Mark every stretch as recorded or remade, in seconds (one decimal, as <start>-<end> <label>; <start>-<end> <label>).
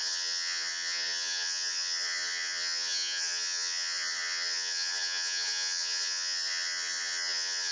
0.0-7.7 remade